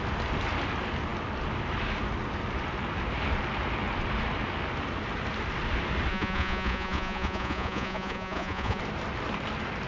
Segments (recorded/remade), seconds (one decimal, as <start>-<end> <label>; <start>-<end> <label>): 0.0-6.1 recorded; 6.1-8.8 remade; 8.8-9.9 recorded